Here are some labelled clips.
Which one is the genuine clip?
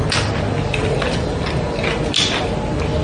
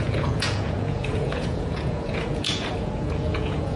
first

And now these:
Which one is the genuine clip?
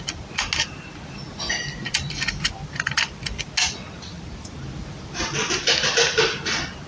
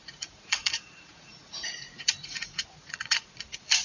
first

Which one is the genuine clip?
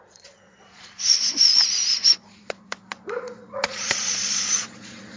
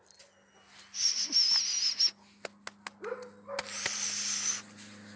second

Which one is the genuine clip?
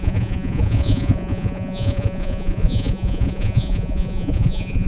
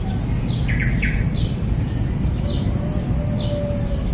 second